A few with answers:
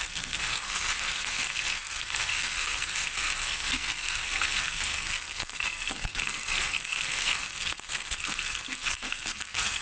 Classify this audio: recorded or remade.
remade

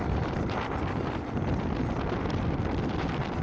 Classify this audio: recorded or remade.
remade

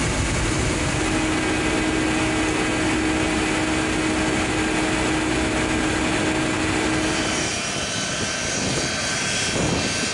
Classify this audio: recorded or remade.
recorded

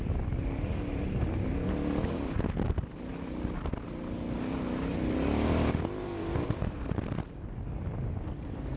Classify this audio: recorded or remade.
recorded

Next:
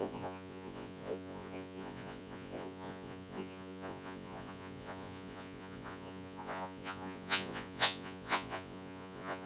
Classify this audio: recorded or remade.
remade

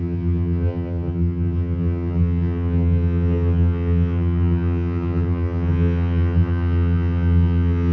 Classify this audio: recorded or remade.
remade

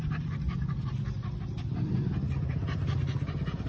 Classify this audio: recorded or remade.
recorded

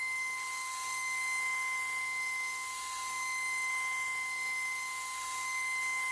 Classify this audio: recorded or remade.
remade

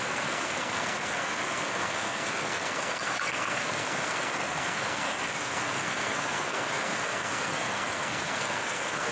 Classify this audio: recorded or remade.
remade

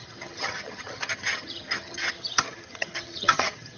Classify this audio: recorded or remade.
remade